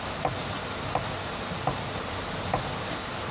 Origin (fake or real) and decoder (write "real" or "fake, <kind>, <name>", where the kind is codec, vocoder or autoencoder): real